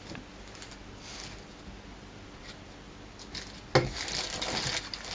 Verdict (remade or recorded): recorded